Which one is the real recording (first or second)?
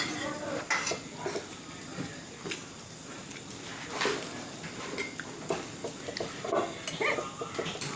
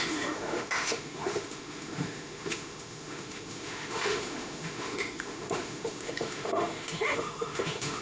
first